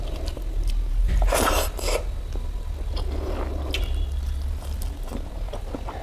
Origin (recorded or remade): recorded